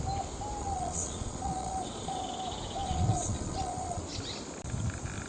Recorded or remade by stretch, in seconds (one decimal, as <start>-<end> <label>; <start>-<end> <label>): 0.0-0.6 recorded; 0.6-2.2 remade; 2.2-2.8 recorded; 2.8-4.0 remade; 4.0-5.3 recorded